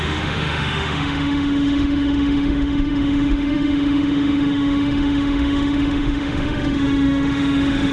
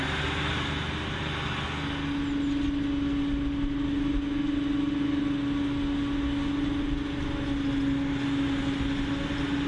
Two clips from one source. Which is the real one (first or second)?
second